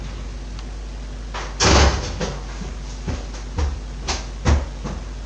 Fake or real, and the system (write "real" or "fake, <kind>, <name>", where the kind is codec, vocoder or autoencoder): real